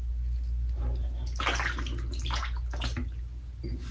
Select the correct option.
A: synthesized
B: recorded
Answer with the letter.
B